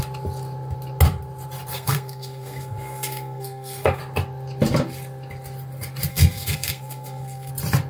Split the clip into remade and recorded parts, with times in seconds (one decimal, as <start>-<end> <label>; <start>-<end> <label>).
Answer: 0.0-1.7 recorded; 1.7-4.0 remade; 4.0-6.1 recorded; 6.1-7.5 remade; 7.5-7.9 recorded